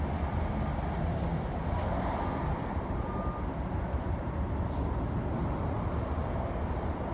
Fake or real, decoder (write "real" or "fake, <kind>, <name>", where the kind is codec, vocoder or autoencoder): real